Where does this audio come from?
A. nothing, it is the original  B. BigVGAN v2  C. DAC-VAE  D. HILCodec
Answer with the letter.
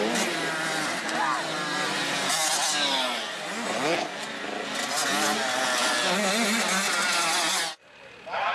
A